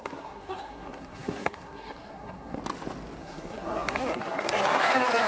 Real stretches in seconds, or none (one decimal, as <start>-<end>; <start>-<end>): 2.6-3.2